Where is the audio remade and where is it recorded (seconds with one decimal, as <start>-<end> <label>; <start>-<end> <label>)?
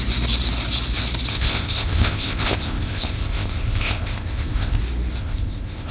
0.0-1.3 recorded; 1.3-4.8 remade; 4.8-5.2 recorded; 5.2-5.9 remade